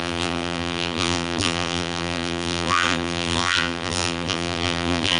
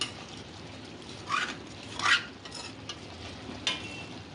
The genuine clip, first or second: second